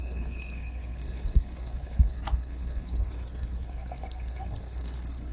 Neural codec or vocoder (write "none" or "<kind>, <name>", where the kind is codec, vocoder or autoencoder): codec, SNAC